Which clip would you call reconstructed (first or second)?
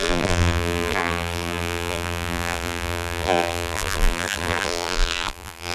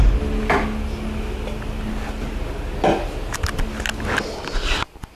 first